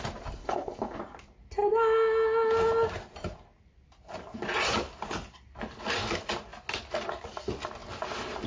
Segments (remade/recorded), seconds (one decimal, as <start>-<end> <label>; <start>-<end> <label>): 0.0-0.4 recorded; 0.4-1.0 remade; 1.0-8.5 recorded